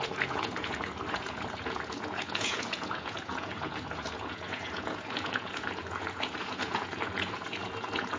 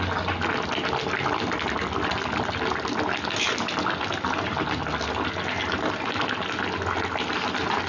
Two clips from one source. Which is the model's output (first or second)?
first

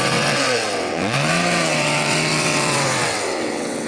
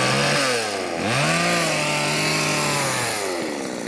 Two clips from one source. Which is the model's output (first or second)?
first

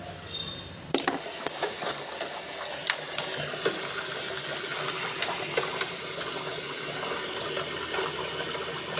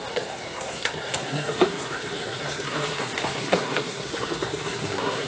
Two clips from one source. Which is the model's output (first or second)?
second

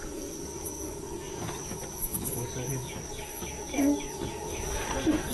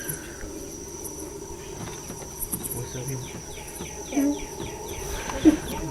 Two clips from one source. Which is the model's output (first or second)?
first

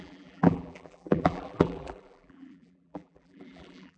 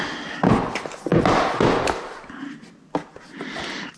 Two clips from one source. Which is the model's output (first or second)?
first